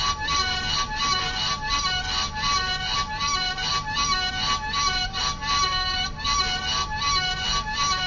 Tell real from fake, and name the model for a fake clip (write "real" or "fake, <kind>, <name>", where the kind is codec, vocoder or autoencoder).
real